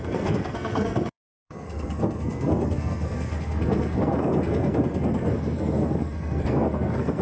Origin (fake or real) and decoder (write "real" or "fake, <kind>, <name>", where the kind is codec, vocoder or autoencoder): fake, codec, SNAC